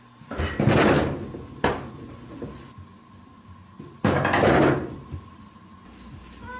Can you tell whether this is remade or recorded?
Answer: recorded